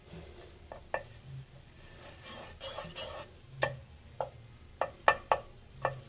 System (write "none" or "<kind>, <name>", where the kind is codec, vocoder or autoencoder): none